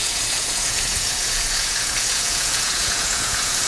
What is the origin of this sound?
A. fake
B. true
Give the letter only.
A